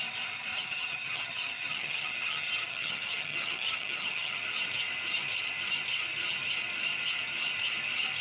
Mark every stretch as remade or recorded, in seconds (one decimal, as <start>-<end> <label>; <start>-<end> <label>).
0.0-0.5 recorded; 0.5-4.4 remade; 4.4-8.2 recorded